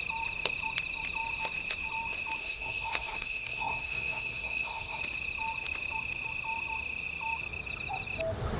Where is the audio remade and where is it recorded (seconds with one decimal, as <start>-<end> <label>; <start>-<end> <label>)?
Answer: 0.0-2.4 recorded; 2.4-5.0 remade; 5.0-8.6 recorded